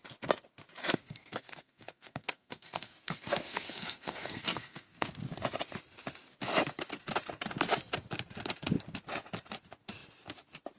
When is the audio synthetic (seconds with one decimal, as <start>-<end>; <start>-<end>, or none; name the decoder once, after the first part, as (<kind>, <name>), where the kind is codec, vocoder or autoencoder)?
0.8-5.1 (codec, SNAC)